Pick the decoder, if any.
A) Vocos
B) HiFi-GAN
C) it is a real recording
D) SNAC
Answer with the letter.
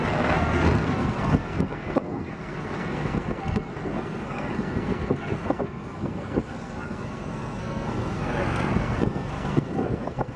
D